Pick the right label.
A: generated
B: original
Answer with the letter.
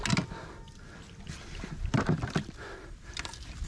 B